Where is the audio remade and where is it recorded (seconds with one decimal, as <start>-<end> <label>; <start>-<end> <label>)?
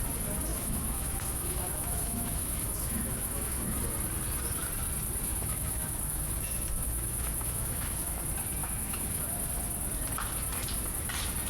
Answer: 0.0-0.5 recorded; 0.5-3.8 remade; 3.8-5.3 recorded; 5.3-8.2 remade; 8.2-8.6 recorded; 8.6-9.2 remade; 9.2-11.5 recorded